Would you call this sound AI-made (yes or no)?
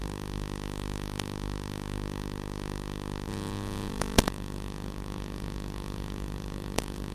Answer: yes